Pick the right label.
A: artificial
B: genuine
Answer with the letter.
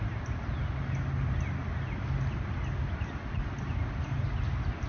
B